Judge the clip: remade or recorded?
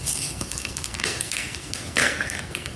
remade